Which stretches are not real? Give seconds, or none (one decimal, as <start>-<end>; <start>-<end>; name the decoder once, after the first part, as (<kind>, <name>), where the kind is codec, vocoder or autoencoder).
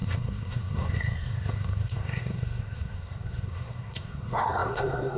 0.0-5.2 (codec, SNAC)